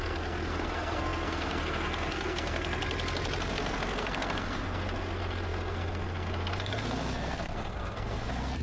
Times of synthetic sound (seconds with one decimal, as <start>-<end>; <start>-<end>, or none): 0.0-2.8; 3.5-8.6

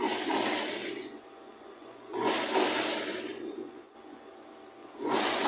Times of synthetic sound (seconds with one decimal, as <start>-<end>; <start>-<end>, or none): 0.8-2.3; 3.3-4.3; 4.8-5.5

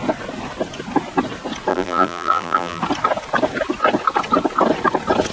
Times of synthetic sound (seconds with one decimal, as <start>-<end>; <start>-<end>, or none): 1.7-2.8

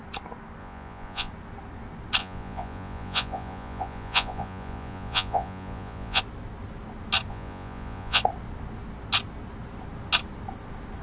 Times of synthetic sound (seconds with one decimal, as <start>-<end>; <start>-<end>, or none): 0.6-1.3; 2.2-6.2; 7.3-8.2

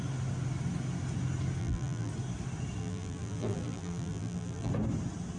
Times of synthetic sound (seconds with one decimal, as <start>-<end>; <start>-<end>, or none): 1.6-2.1; 2.8-4.7